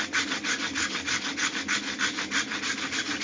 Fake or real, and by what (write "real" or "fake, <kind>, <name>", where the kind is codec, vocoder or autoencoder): real